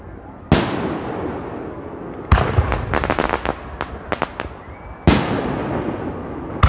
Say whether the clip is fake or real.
real